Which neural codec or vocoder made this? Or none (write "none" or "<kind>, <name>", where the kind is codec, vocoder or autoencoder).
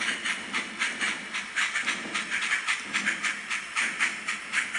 none